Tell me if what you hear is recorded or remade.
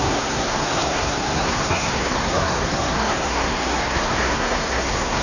remade